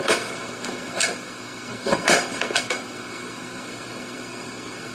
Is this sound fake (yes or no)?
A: yes